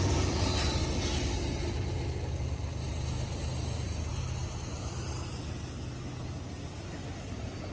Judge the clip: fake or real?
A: real